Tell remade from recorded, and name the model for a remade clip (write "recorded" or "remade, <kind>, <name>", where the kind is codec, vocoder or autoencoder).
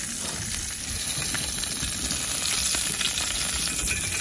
recorded